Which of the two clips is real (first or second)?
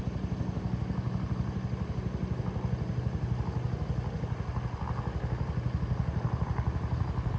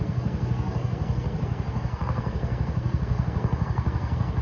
first